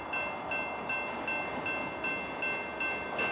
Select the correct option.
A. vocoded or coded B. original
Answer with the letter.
B